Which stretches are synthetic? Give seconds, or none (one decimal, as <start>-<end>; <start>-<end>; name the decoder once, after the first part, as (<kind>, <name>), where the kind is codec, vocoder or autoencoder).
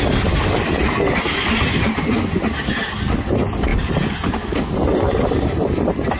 none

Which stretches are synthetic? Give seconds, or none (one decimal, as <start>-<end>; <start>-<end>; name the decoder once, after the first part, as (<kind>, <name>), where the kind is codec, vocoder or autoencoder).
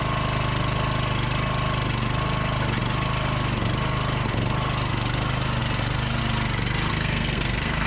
6.9-7.9 (codec, SNAC)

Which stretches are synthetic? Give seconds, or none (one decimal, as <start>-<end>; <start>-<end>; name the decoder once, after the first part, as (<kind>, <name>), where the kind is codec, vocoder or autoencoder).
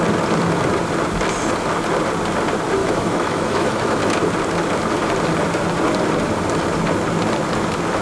2.8-4.0 (autoencoder, DAC-VAE)